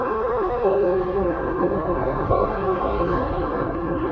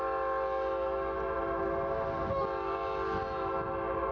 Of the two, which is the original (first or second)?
second